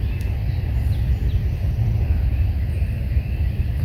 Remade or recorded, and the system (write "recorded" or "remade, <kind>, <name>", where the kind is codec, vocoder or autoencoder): recorded